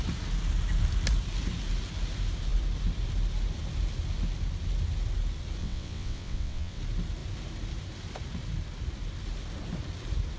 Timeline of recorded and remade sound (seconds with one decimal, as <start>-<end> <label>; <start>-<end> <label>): 0.0-5.6 recorded; 5.6-6.8 remade; 6.8-10.4 recorded

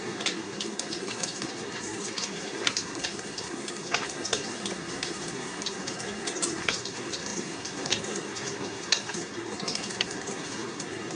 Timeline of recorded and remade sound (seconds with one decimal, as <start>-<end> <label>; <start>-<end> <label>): 0.0-11.2 remade

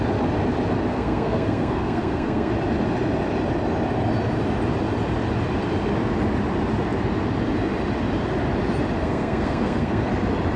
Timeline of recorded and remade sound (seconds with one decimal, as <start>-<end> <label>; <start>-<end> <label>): 0.0-0.9 recorded; 0.9-2.5 remade; 2.5-9.0 recorded; 9.0-10.1 remade; 10.1-10.6 recorded

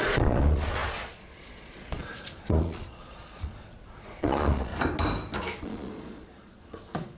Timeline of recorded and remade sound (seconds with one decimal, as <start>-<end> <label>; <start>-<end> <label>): 0.0-4.7 remade; 4.7-5.6 recorded; 5.6-7.2 remade

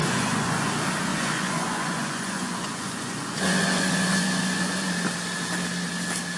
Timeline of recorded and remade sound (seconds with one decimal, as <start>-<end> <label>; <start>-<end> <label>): 0.0-0.7 remade; 0.7-1.1 recorded; 1.1-4.9 remade; 4.9-6.4 recorded

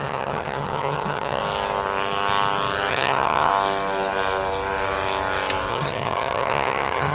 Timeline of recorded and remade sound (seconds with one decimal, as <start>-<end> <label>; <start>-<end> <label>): 0.0-1.4 remade; 1.4-2.9 recorded; 2.9-3.5 remade; 3.5-5.7 recorded; 5.7-7.1 remade

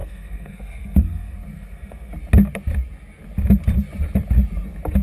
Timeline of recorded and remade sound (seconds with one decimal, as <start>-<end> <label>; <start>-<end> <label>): 0.0-2.1 remade; 2.1-5.0 recorded

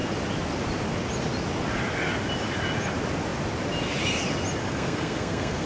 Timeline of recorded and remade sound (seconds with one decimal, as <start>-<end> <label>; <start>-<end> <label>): 0.0-4.6 recorded; 4.6-5.7 remade